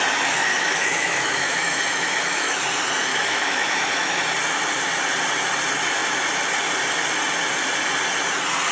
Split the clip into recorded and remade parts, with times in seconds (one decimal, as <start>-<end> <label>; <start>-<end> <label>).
0.0-0.5 recorded; 0.5-2.6 remade; 2.6-3.1 recorded; 3.1-4.2 remade; 4.2-8.7 recorded